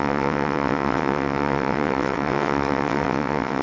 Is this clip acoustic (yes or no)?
no